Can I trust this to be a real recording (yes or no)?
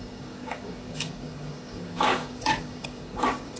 no